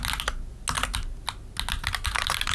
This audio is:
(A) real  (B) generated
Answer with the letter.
A